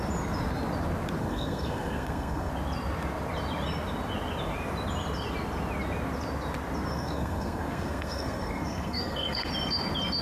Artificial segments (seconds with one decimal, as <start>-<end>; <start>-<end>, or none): 1.2-2.5; 6.9-9.5